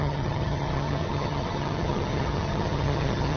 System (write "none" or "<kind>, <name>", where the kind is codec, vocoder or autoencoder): vocoder, HiFi-GAN